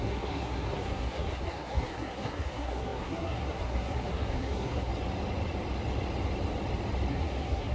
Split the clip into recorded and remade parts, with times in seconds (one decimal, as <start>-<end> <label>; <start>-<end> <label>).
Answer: 0.0-4.9 remade; 4.9-7.1 recorded; 7.1-7.7 remade